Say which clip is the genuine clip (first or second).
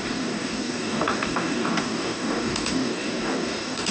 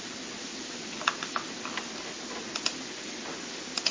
second